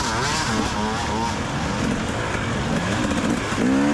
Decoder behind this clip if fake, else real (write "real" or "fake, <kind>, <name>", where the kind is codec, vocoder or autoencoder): real